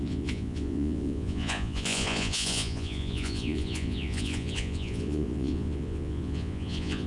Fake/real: fake